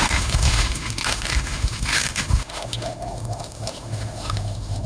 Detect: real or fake fake